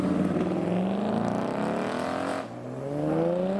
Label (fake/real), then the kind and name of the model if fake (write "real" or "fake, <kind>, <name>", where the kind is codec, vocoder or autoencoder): real